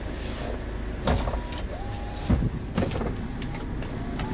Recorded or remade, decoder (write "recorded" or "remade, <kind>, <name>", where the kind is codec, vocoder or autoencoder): recorded